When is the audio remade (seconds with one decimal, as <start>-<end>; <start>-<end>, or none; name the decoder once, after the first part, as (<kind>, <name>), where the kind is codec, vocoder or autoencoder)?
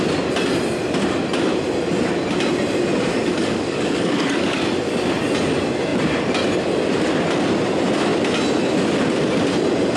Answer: 3.3-4.6 (codec, DAC)